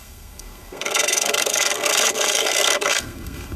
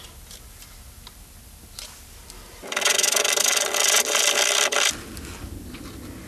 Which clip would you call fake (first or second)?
first